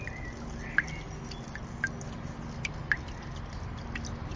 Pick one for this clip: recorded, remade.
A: recorded